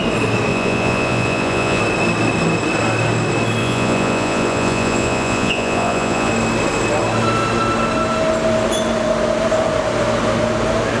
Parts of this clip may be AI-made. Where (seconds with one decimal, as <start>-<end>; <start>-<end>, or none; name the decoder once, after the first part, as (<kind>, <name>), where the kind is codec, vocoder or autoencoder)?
0.5-1.8 (vocoder, Vocos); 3.6-6.3

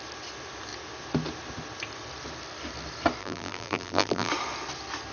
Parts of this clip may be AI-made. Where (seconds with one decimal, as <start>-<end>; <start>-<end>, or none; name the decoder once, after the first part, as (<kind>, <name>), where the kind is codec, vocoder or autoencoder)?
3.2-4.3 (vocoder, BigVGAN v2)